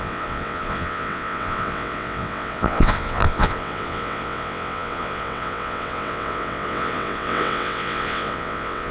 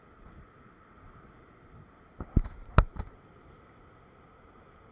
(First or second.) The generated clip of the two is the first